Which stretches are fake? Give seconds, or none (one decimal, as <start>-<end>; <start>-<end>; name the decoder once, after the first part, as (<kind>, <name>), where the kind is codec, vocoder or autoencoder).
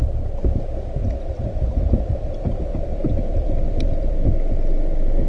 1.0-4.2 (vocoder, BigVGAN v2)